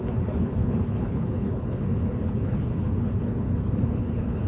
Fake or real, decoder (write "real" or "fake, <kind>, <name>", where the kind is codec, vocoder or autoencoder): fake, codec, HILCodec